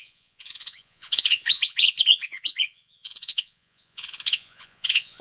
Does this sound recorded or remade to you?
remade